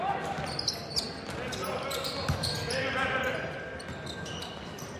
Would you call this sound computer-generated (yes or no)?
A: no